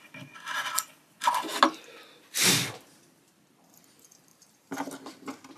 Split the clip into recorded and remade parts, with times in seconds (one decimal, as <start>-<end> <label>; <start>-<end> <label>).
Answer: 0.0-4.3 recorded; 4.3-4.9 remade; 4.9-5.6 recorded